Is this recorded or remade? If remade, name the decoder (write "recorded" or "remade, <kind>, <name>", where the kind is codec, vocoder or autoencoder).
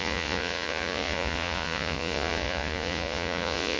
remade, vocoder, Vocos